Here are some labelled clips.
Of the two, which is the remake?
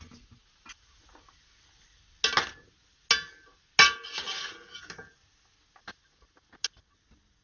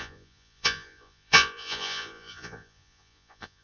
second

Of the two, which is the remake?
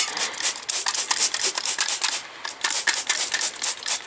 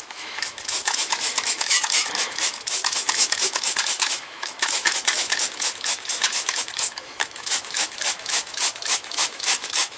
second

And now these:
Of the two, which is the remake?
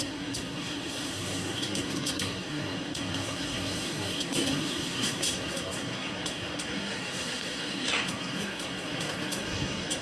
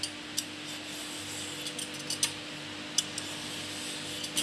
first